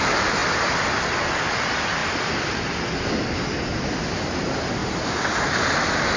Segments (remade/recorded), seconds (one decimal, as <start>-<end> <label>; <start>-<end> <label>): 0.0-6.2 recorded

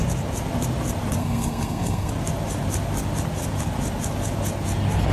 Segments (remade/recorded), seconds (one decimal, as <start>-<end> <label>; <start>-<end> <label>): 0.0-1.2 recorded; 1.2-2.1 remade; 2.1-5.1 recorded

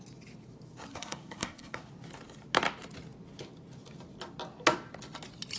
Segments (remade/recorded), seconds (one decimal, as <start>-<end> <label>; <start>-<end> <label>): 0.0-0.9 recorded; 0.9-1.9 remade; 1.9-5.6 recorded

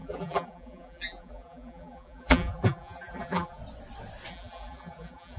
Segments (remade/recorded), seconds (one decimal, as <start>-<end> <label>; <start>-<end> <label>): 0.0-3.6 remade; 3.6-4.3 recorded; 4.3-5.4 remade

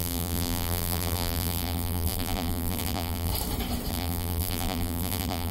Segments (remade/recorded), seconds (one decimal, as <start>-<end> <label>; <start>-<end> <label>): 0.0-3.3 remade; 3.3-3.9 recorded; 3.9-5.5 remade